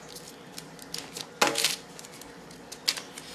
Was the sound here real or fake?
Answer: real